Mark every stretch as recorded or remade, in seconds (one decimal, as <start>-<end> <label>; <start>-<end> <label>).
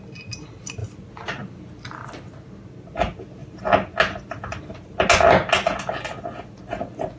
0.0-7.2 recorded